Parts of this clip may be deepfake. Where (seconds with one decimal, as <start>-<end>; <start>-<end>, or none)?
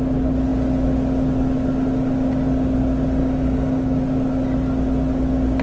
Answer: 3.2-4.0